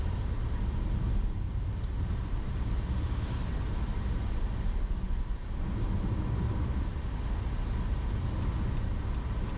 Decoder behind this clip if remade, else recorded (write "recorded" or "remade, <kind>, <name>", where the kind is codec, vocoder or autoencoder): recorded